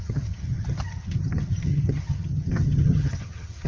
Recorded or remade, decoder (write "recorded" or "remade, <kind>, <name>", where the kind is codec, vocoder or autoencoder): remade, vocoder, HiFi-GAN